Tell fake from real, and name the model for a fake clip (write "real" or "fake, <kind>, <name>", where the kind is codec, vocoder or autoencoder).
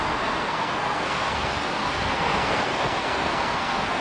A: fake, codec, SNAC